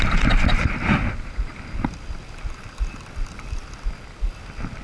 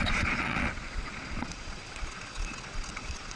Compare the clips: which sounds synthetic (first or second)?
second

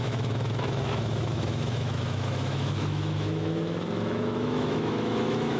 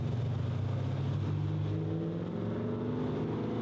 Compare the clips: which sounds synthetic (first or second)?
first